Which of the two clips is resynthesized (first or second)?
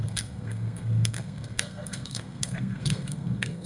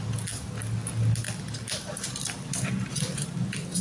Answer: first